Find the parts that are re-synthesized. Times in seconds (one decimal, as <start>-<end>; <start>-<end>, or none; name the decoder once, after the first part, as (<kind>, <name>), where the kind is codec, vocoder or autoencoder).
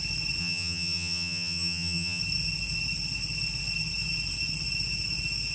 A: 0.4-2.2 (vocoder, HiFi-GAN)